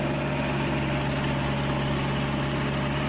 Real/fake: real